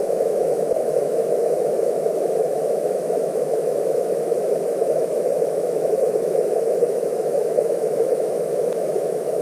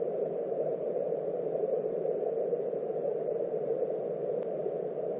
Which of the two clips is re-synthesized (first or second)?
first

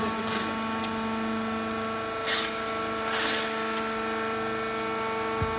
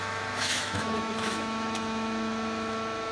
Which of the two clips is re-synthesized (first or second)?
second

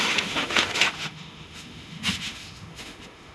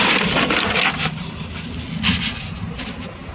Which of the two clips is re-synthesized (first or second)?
first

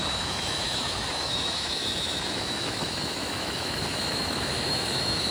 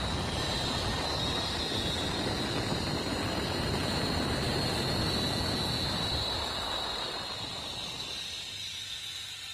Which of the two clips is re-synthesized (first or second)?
first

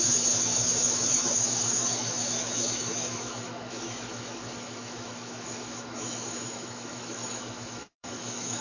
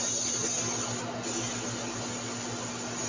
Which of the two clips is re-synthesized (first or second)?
first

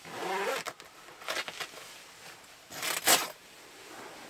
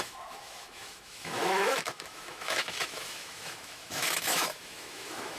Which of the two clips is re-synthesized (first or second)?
second